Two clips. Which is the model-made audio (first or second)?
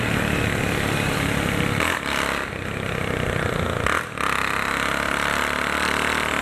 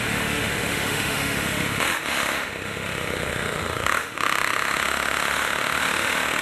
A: second